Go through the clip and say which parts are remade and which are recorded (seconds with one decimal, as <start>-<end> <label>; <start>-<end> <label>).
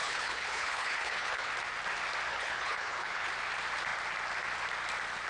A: 0.0-1.5 remade; 1.5-2.3 recorded; 2.3-3.3 remade; 3.3-5.3 recorded